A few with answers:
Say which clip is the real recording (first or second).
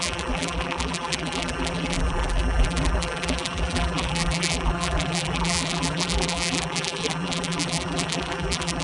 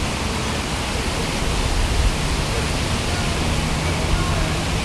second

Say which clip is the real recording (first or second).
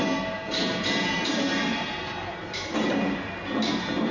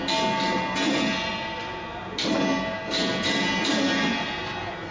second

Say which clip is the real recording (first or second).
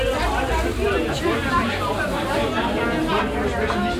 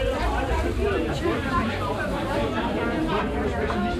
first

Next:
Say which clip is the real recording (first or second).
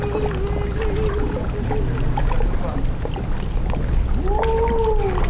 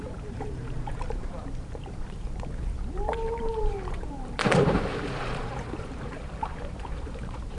first